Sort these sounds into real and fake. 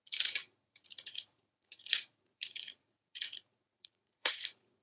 fake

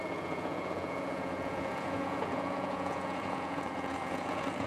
fake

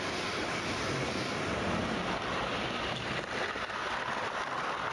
real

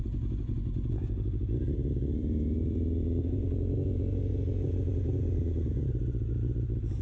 fake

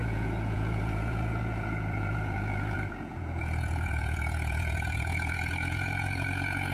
fake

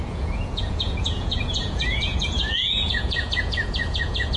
fake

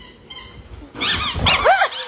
real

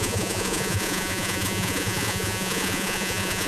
fake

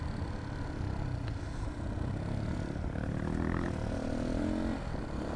real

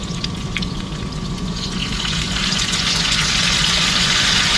fake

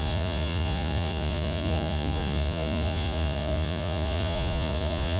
fake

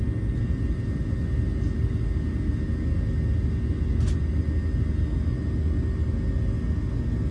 real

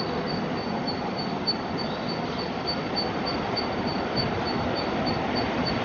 real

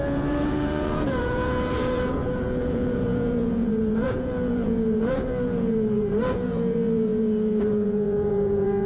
fake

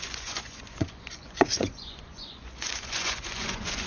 fake